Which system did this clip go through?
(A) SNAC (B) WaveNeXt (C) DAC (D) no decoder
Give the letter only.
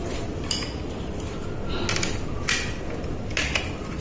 D